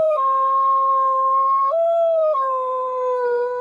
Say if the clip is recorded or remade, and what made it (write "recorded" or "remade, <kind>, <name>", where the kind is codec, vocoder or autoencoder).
remade, codec, SNAC